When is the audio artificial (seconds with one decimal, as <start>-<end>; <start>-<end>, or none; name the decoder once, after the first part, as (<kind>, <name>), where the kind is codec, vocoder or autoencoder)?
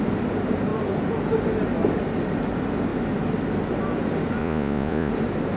4.4-5.1 (vocoder, Vocos)